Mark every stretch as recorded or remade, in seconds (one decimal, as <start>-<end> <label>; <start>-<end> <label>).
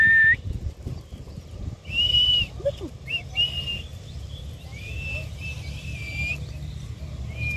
0.0-3.9 recorded; 3.9-5.0 remade; 5.0-7.6 recorded